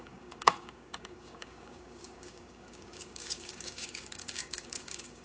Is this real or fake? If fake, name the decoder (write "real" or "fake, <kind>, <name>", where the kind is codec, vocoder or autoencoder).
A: fake, codec, DAC